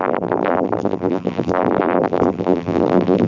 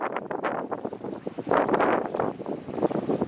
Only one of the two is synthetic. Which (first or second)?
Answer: first